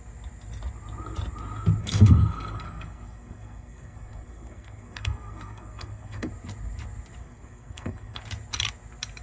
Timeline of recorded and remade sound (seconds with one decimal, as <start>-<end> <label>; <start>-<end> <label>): 0.0-1.8 recorded; 1.8-6.3 remade; 6.3-7.2 recorded; 7.2-8.2 remade; 8.2-9.2 recorded